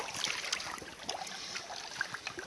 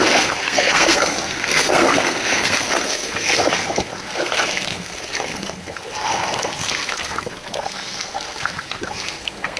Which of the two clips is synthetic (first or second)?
second